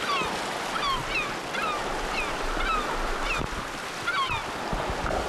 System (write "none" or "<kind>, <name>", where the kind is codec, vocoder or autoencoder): none